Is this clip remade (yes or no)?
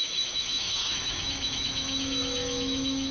yes